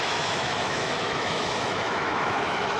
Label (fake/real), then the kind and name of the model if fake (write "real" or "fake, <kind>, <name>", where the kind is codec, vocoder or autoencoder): fake, autoencoder, DAC-VAE